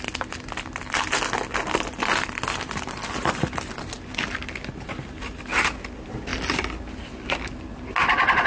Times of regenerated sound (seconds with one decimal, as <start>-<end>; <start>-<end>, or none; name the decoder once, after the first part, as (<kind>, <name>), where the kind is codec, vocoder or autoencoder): none